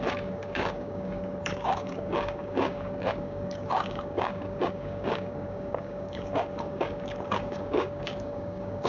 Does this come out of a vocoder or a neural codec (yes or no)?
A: yes